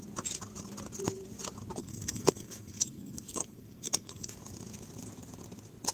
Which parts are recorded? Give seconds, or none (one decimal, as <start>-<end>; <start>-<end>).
0.0-1.8; 4.3-5.9